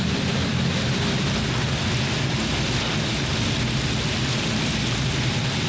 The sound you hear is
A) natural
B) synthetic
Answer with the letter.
A